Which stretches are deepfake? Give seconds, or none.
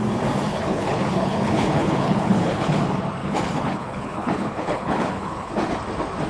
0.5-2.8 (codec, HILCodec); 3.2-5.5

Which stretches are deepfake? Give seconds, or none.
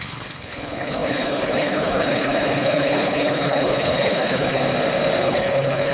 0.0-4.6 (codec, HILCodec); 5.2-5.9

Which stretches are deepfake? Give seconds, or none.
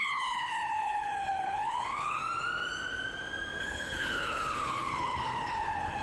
0.0-2.2 (codec, HILCodec); 3.6-6.0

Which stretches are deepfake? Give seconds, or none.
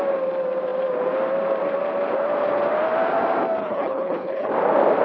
3.6-4.5 (codec, HILCodec)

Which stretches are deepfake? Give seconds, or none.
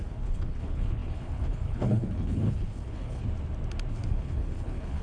0.0-3.2 (codec, HILCodec); 3.9-5.0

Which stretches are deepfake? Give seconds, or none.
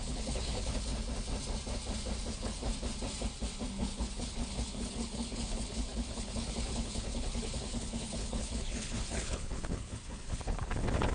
0.0-0.9 (codec, HILCodec); 2.3-2.7; 3.7-11.1